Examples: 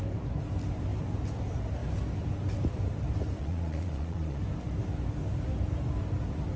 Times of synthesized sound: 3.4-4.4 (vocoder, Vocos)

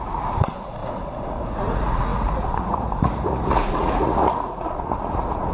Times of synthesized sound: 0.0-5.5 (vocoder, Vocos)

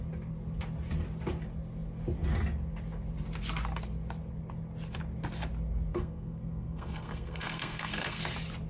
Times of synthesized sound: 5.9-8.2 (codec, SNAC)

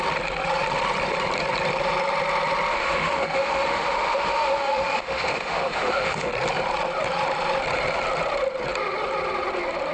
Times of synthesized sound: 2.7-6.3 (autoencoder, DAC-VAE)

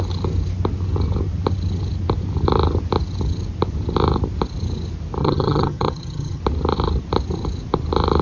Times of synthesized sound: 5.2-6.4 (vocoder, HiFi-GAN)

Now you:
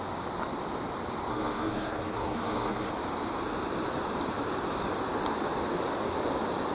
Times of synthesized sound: 1.3-2.9 (codec, SNAC)